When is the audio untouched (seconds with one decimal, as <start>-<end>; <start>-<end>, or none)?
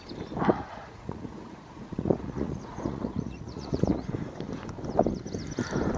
0.0-0.5; 4.1-6.0